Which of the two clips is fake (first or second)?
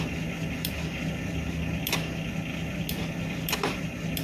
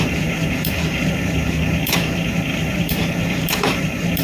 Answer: second